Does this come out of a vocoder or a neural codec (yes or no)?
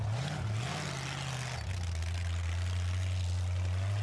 no